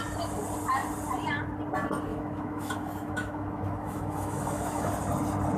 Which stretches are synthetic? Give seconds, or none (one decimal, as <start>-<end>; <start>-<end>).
2.1-4.9